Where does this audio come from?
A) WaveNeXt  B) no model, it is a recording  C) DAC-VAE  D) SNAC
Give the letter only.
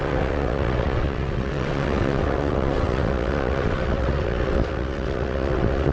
A